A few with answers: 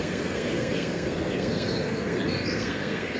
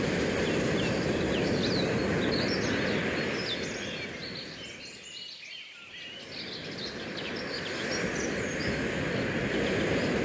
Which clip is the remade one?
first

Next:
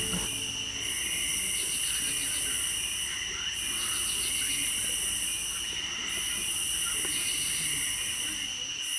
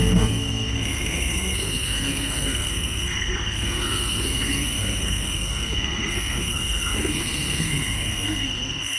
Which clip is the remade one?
second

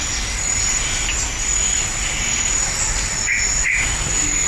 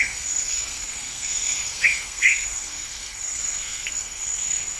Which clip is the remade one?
second